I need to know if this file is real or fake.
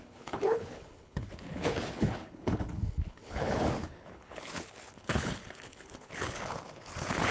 fake